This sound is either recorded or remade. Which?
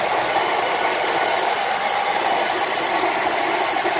recorded